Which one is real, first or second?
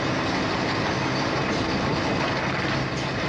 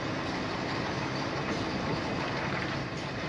first